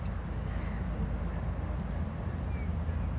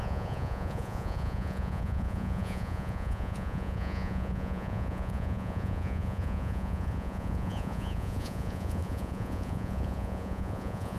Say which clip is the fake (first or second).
second